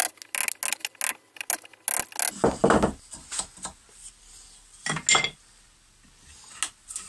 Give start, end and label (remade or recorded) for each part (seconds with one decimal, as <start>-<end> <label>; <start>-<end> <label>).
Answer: 0.0-7.1 recorded